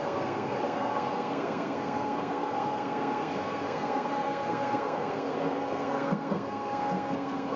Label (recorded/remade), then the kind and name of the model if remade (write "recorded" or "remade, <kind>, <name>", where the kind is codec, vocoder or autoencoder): remade, codec, SNAC